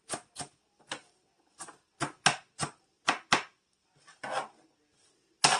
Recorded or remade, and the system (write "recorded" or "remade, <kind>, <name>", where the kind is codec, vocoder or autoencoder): recorded